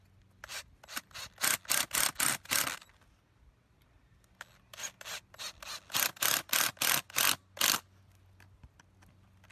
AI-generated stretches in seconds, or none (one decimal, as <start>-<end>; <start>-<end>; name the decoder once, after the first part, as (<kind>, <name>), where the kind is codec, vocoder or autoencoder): none